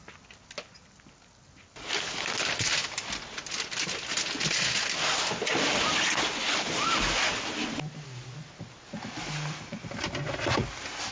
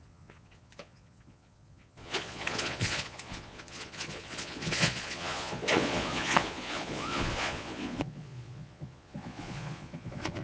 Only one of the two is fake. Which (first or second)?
second